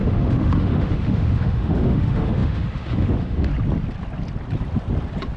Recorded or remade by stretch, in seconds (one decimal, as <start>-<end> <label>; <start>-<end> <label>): 0.0-3.5 remade; 3.5-5.4 recorded